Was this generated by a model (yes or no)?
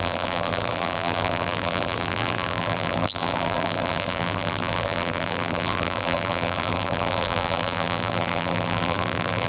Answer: yes